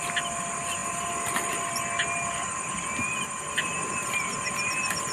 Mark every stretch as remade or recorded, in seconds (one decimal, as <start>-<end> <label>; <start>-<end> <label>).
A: 0.0-5.1 recorded